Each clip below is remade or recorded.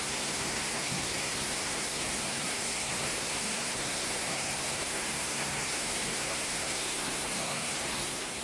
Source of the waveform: remade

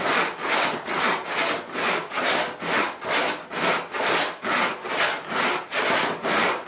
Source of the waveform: recorded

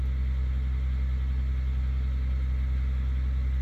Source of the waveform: recorded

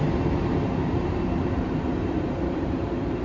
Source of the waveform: remade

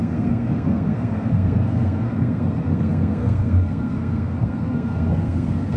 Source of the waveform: remade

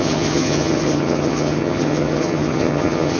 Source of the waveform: remade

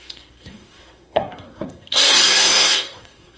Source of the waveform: remade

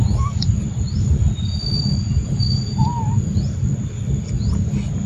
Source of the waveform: recorded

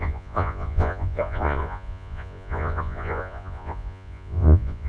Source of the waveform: remade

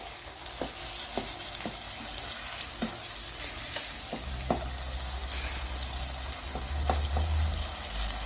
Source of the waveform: recorded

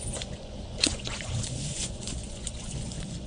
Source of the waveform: remade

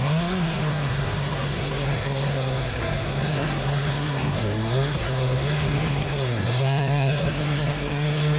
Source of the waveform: remade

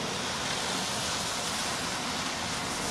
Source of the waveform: recorded